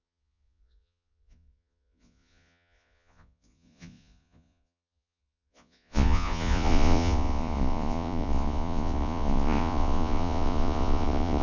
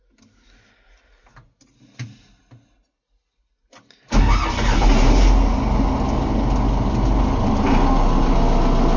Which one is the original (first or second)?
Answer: second